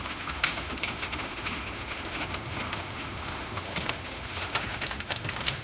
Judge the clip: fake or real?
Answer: fake